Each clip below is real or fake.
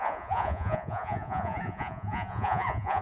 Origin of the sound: fake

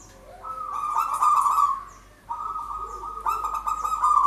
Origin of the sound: real